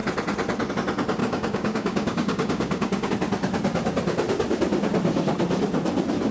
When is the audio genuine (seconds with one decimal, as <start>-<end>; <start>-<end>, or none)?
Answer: 0.0-1.2; 3.1-6.3